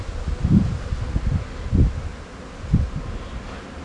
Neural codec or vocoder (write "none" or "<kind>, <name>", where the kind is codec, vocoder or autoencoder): none